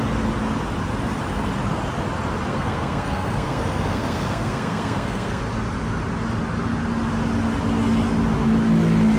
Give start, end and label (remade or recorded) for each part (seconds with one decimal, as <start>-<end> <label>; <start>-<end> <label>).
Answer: 0.0-2.5 recorded; 2.5-5.4 remade; 5.4-9.2 recorded